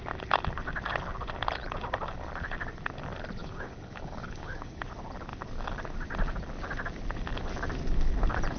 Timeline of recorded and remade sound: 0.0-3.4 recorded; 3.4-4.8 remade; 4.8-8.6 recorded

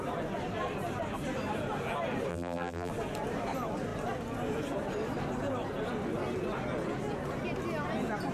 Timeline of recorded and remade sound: 0.0-2.3 recorded; 2.3-2.9 remade; 2.9-8.3 recorded

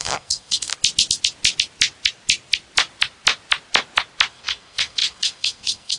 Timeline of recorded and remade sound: 0.0-0.7 remade; 0.7-4.3 recorded; 4.3-6.0 remade

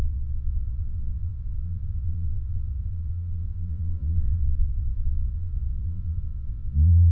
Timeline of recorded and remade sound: 0.0-7.1 remade

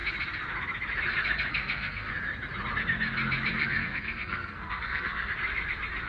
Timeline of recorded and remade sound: 0.0-1.5 recorded; 1.5-2.1 remade; 2.1-3.6 recorded; 3.6-5.3 remade; 5.3-6.1 recorded

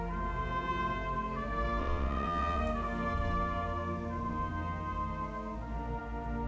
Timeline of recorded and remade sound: 0.0-1.8 recorded; 1.8-2.6 remade; 2.6-6.5 recorded

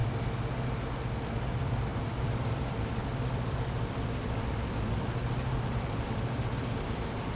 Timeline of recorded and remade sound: 0.0-1.2 recorded; 1.2-7.4 remade

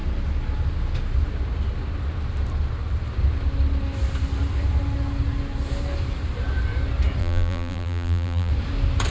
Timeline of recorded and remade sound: 0.0-7.2 recorded; 7.2-8.5 remade; 8.5-9.1 recorded